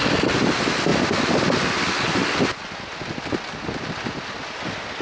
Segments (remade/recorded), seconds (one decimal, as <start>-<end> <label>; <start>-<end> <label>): 0.0-5.0 recorded